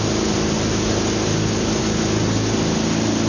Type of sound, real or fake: real